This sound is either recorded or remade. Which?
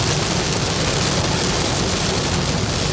recorded